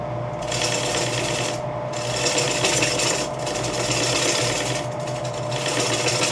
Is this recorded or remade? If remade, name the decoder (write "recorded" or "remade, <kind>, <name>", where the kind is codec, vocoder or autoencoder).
recorded